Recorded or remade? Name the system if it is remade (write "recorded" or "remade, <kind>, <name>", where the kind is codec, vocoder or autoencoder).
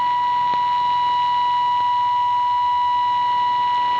recorded